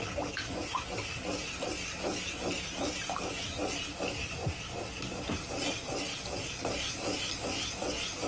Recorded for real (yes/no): yes